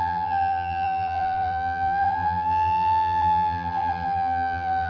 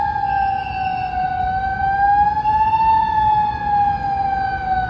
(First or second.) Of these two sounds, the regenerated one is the first